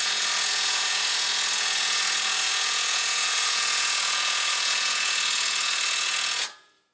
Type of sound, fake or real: fake